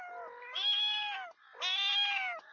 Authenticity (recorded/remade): recorded